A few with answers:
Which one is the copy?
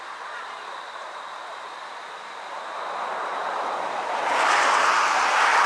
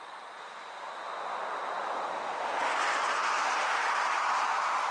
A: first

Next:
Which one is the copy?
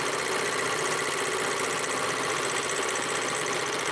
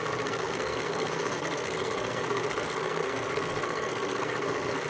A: second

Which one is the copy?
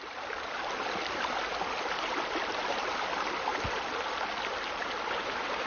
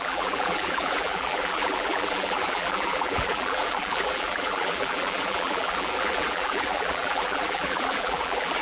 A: second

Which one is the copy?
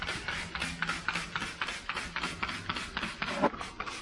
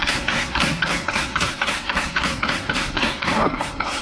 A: second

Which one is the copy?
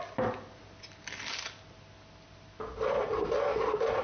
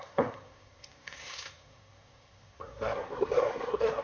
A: second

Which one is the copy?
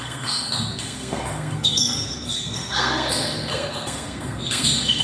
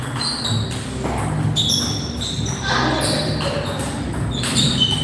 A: first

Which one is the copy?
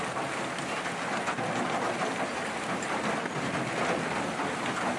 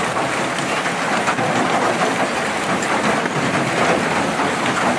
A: second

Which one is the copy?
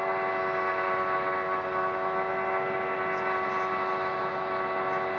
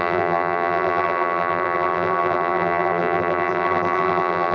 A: second